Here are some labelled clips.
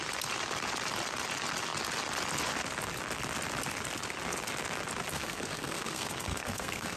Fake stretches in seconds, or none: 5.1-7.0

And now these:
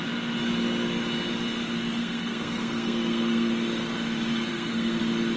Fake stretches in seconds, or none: 2.0-3.5; 4.5-5.0

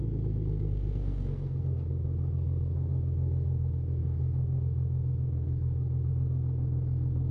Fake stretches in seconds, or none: 0.0-7.3

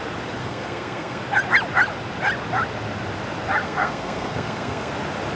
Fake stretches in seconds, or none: 0.4-1.2; 3.6-4.9

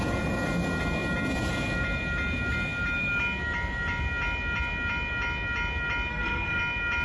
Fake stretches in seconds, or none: 6.1-6.6

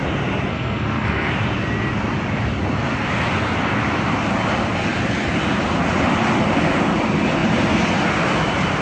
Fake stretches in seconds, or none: 0.5-1.3

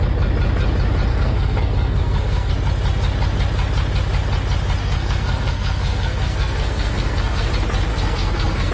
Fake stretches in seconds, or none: 1.1-2.5; 4.8-7.5; 7.9-8.7

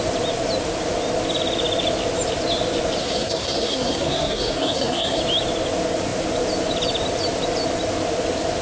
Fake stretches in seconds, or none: 3.0-5.2